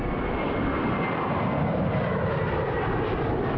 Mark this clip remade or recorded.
recorded